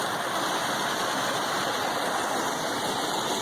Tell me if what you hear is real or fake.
real